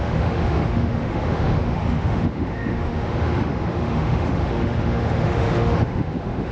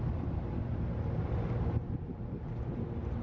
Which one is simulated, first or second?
first